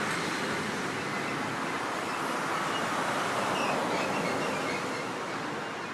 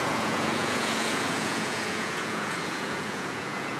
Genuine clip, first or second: first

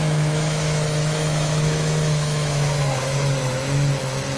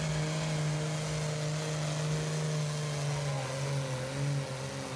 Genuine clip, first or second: second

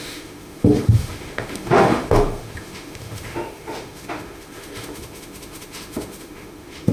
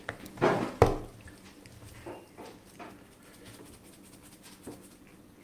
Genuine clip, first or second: second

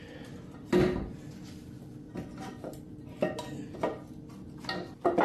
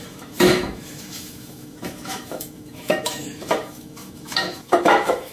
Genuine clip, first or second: first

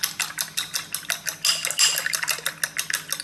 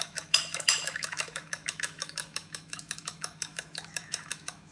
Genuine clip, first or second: first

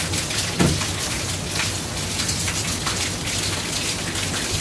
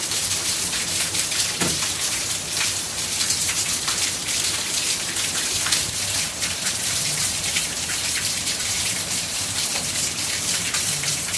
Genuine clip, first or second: first